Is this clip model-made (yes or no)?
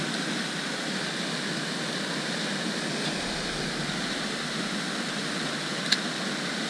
no